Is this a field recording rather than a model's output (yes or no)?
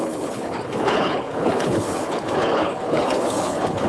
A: no